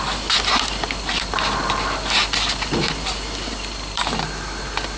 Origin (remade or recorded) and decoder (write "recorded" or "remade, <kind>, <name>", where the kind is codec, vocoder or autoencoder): remade, vocoder, BigVGAN v2